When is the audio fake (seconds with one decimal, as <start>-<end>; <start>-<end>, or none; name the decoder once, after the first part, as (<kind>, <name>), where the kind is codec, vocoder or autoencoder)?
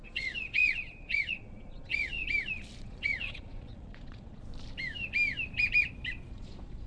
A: 0.0-2.2 (vocoder, Vocos); 2.8-4.4; 6.3-6.9